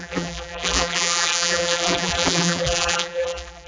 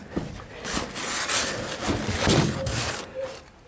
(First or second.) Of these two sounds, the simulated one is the first